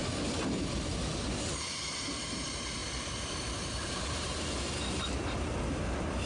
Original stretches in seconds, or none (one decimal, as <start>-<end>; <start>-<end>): 1.2-2.8; 5.8-6.3